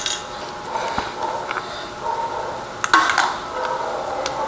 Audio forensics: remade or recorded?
recorded